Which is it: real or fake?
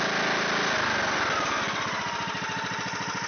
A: real